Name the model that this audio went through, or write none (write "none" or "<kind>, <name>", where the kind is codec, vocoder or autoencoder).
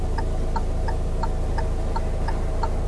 none